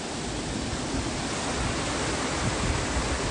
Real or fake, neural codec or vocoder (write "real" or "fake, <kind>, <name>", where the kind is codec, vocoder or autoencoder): real